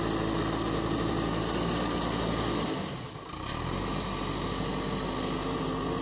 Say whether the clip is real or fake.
real